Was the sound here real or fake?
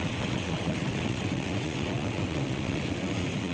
fake